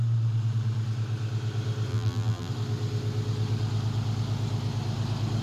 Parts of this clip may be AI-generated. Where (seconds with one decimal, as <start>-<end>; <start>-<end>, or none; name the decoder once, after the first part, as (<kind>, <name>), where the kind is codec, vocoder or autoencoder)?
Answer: 1.9-2.5 (vocoder, BigVGAN v2)

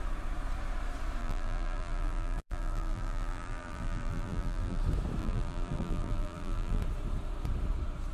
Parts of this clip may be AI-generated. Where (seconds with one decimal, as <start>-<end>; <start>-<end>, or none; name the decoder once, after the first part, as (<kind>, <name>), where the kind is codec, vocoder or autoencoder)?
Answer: 1.2-4.8 (vocoder, BigVGAN v2); 5.2-6.8

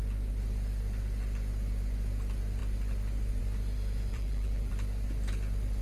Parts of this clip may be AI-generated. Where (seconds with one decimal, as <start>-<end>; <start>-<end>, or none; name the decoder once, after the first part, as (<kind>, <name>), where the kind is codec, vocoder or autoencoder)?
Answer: 4.1-4.7 (vocoder, BigVGAN v2)